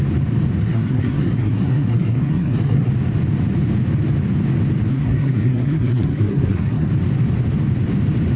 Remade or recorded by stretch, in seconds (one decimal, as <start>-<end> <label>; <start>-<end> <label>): 0.0-0.6 recorded; 0.6-2.9 remade; 2.9-4.9 recorded; 4.9-6.9 remade; 6.9-8.4 recorded